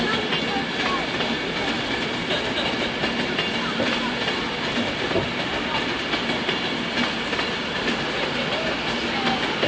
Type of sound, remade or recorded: recorded